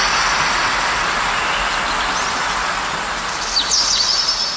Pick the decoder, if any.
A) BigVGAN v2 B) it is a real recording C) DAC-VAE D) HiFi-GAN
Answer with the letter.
B